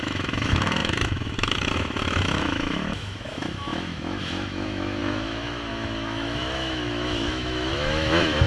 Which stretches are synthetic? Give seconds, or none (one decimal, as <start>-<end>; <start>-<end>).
0.0-8.5